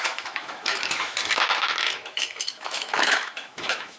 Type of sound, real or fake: fake